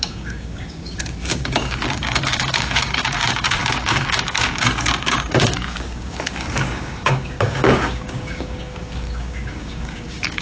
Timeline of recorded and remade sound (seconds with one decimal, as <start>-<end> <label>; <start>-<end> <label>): 0.0-10.4 remade